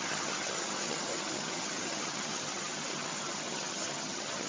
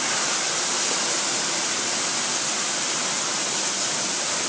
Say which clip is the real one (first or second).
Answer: second